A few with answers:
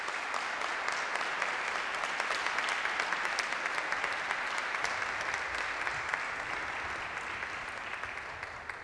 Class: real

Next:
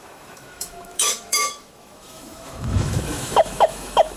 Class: fake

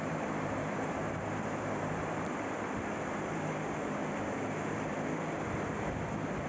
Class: fake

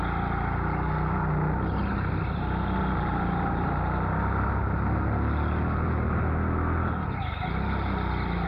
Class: real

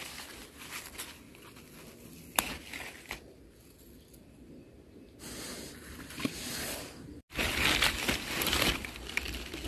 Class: real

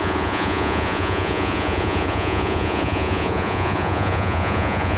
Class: fake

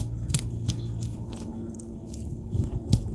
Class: fake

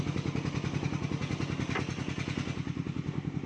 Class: real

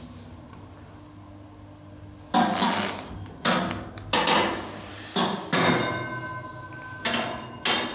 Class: real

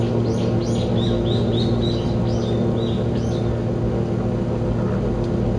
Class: real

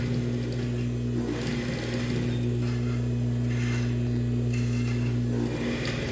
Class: real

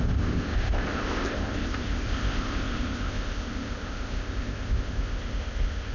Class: fake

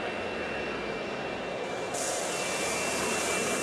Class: real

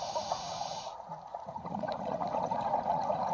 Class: fake